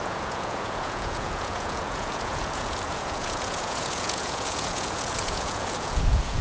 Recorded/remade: remade